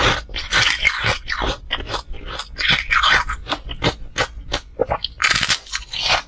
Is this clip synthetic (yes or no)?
no